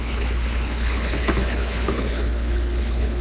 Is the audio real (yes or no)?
no